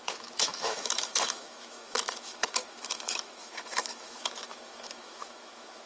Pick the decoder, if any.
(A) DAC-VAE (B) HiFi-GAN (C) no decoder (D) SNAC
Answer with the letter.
A